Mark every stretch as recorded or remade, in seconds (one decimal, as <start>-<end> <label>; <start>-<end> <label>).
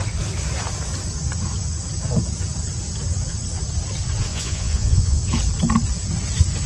0.0-4.3 recorded; 4.3-5.2 remade; 5.2-6.7 recorded